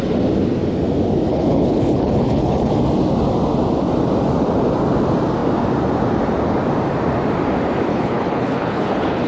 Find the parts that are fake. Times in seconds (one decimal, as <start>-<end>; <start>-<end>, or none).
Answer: 1.3-2.8; 7.9-9.3